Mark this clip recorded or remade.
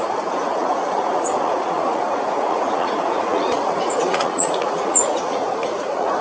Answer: remade